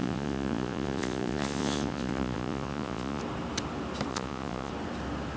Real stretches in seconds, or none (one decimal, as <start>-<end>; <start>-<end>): 3.2-4.1; 4.7-5.4